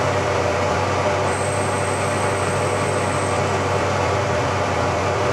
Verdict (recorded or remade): recorded